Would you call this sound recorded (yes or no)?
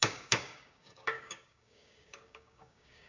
no